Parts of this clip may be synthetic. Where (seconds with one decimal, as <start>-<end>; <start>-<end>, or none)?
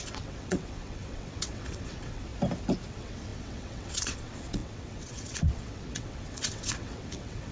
0.0-2.3; 2.9-7.5